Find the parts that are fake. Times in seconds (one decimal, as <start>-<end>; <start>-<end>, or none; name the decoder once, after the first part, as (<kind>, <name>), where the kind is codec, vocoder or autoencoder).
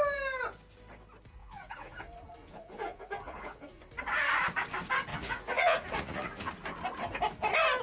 1.4-2.0 (vocoder, Vocos); 2.4-3.8; 5.1-6.5